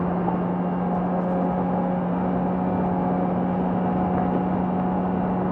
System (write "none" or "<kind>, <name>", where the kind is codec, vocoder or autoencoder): none